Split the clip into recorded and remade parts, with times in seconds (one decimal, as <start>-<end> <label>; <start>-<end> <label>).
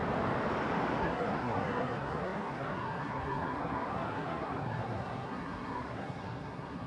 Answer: 0.0-1.0 recorded; 1.0-6.9 remade